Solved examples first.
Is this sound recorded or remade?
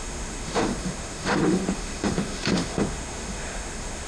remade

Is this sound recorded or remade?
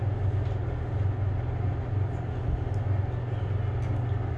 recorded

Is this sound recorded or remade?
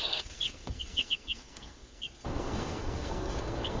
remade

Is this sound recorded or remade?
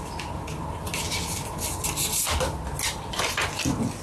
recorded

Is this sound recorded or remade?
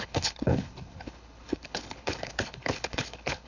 remade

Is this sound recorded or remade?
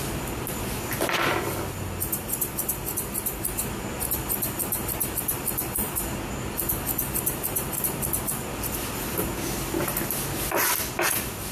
recorded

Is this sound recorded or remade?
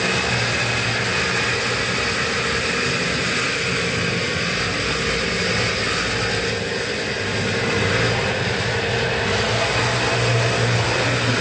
recorded